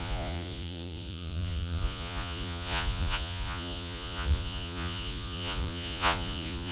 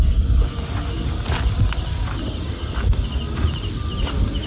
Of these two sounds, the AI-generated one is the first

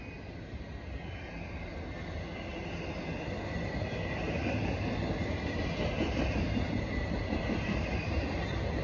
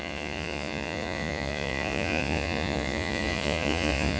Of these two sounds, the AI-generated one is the second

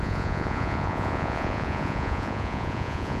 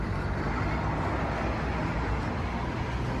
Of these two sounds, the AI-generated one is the first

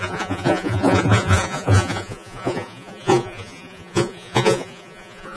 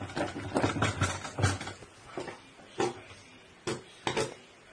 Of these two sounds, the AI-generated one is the first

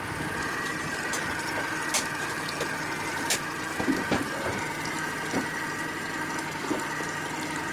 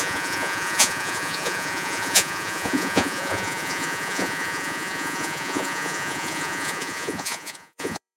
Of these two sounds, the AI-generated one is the second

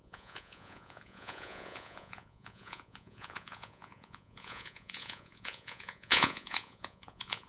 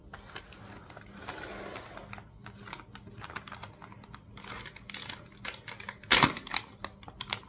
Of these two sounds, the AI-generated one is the first